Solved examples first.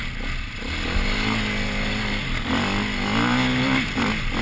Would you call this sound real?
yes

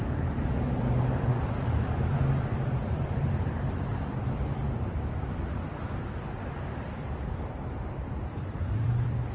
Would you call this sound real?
no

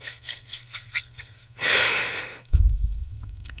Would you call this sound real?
no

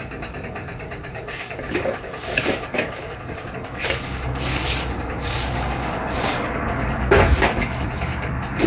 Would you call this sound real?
no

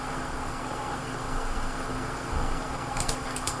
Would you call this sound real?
no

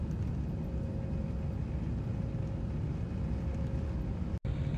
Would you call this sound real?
yes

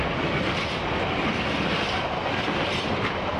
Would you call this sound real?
yes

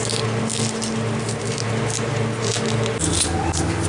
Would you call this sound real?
yes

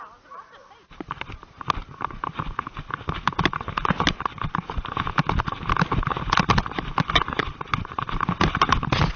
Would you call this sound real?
yes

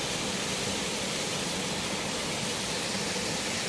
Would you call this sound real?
yes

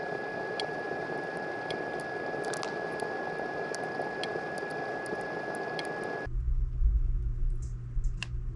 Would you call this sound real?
yes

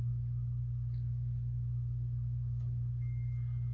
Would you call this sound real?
yes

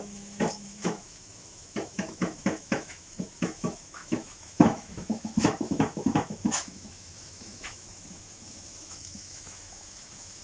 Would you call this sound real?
no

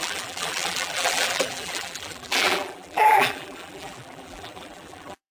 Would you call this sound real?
no